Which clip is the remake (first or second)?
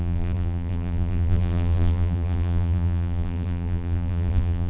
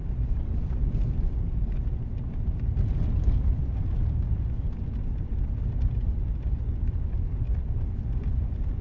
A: first